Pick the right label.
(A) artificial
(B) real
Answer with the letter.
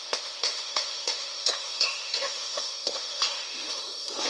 A